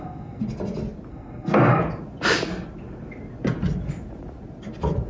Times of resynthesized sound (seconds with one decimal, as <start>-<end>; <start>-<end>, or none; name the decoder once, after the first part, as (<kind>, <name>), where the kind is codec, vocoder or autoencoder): 0.0-0.4 (codec, SNAC); 1.1-1.8